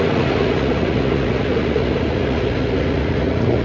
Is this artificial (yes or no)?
yes